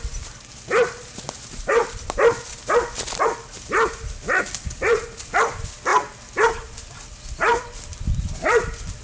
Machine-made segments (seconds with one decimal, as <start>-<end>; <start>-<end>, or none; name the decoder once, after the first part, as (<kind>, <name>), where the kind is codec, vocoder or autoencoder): 0.0-1.8 (vocoder, BigVGAN v2); 2.4-5.9; 7.2-9.0